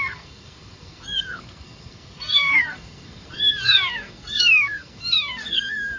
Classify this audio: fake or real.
fake